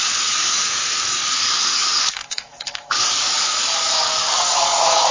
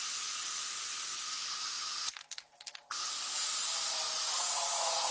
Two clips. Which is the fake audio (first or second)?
first